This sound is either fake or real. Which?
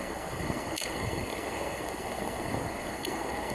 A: fake